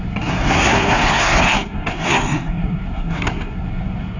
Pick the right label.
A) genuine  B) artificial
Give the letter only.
B